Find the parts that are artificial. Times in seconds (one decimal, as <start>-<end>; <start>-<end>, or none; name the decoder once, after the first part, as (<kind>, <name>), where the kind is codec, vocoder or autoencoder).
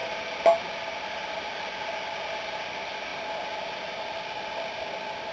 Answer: none